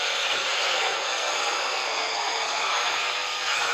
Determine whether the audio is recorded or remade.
remade